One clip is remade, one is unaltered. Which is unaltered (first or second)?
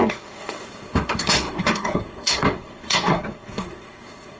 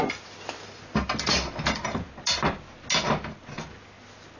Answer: second